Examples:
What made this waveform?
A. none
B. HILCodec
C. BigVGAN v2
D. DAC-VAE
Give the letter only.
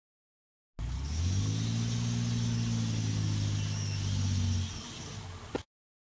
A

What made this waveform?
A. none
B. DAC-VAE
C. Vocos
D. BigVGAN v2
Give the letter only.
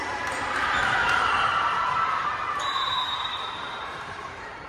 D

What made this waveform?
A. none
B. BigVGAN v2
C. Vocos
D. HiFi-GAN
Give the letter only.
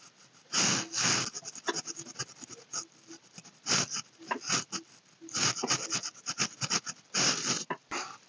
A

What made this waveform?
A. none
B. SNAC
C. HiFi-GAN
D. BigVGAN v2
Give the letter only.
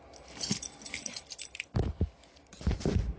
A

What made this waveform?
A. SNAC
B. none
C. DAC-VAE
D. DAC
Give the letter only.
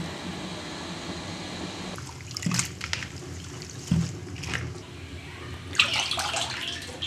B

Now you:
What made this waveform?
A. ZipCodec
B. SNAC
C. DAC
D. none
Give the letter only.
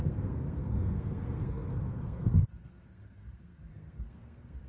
B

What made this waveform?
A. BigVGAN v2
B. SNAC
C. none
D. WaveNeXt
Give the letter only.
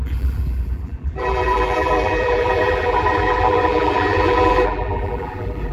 A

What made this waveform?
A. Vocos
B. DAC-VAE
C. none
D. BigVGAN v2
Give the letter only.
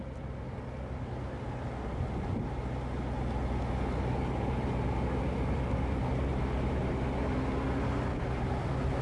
C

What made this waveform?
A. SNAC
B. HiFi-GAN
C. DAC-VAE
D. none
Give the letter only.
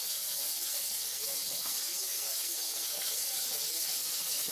A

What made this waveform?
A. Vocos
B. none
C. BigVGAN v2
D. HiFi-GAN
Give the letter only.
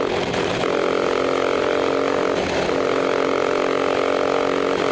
B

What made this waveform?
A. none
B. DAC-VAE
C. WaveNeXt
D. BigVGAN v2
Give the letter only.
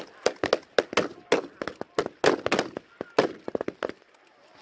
A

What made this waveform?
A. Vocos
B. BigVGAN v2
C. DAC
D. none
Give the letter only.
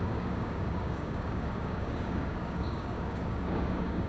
C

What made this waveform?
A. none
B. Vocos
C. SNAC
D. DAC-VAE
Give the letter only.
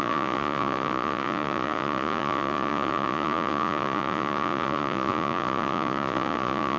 B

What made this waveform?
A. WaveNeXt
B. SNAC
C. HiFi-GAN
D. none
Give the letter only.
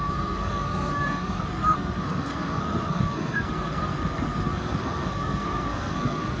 B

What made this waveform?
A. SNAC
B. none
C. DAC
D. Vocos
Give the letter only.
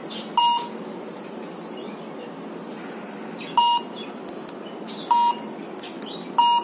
B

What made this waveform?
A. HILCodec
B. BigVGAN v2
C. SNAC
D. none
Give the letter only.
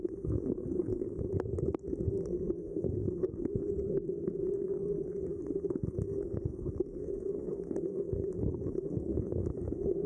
C